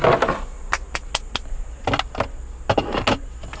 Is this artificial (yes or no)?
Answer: no